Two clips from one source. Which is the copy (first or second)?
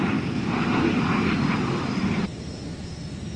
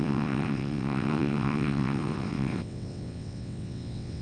second